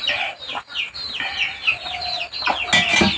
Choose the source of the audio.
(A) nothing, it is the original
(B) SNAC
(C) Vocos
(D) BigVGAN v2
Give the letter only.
A